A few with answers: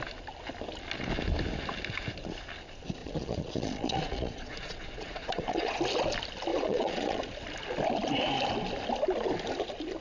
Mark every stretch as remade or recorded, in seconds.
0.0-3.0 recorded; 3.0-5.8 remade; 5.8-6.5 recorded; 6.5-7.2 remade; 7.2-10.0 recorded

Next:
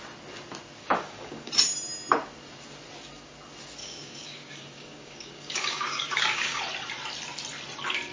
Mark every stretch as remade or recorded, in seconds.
0.0-0.8 recorded; 0.8-1.5 remade; 1.5-3.8 recorded; 3.8-6.6 remade; 6.6-8.1 recorded